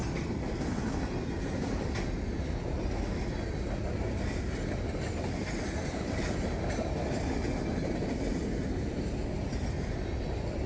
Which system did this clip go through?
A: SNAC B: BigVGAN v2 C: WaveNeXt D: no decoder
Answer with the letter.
D